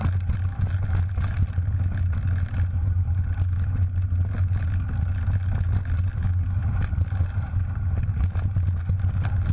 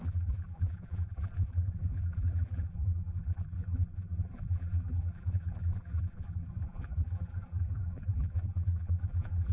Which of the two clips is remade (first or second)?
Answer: second